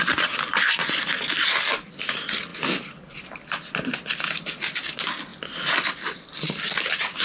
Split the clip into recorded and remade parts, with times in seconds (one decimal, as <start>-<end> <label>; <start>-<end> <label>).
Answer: 0.0-7.2 recorded